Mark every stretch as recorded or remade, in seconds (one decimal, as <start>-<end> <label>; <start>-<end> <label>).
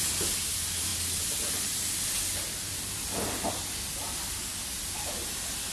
0.0-5.7 recorded